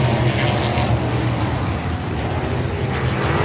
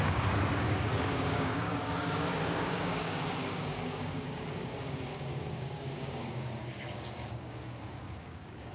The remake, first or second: second